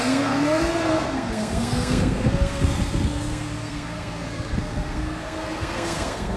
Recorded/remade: remade